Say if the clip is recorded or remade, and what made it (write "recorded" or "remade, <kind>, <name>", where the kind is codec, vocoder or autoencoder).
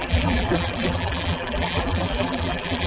remade, vocoder, BigVGAN v2